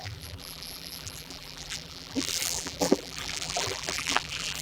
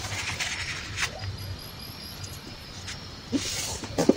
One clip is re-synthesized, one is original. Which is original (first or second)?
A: second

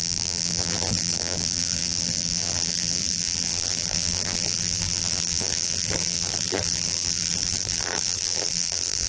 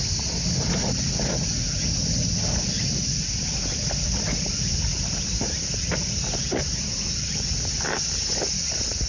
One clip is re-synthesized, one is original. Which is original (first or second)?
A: second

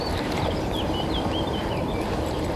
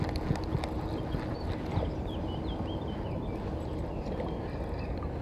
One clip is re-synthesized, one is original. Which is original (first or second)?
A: second